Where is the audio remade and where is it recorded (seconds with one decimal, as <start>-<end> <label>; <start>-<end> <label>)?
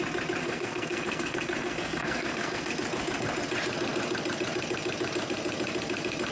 0.0-0.4 recorded; 0.4-2.7 remade; 2.7-6.3 recorded